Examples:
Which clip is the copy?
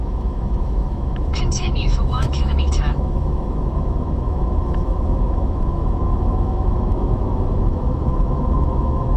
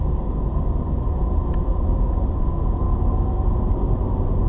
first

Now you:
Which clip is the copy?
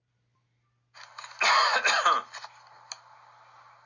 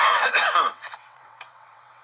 second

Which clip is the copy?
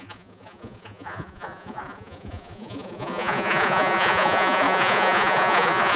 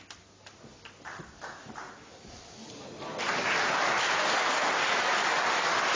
first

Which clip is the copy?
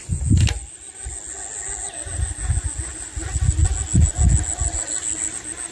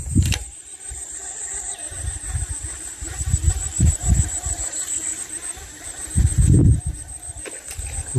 second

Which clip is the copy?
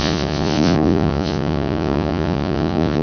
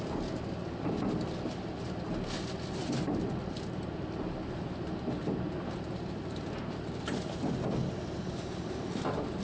first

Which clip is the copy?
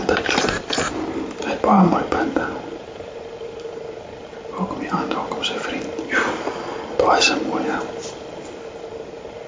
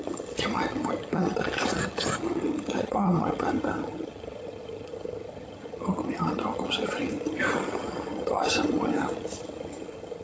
second